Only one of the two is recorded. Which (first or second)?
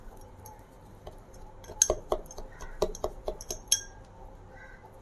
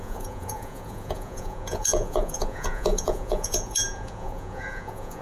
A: first